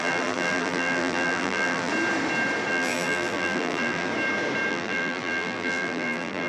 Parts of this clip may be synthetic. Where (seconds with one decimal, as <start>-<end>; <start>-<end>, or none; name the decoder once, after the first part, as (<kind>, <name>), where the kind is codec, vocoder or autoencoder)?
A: 0.0-1.9 (vocoder, BigVGAN v2); 2.7-4.1; 4.7-6.5